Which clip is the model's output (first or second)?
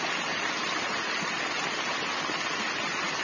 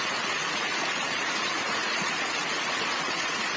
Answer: second